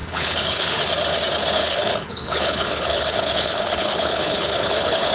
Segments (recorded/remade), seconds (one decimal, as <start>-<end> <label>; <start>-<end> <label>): 0.0-0.8 remade; 0.8-1.6 recorded; 1.6-5.1 remade